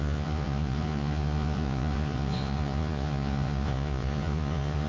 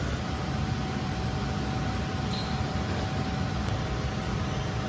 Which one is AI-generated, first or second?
first